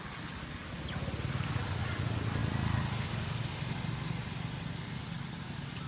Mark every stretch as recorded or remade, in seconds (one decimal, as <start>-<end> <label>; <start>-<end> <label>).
0.0-5.9 recorded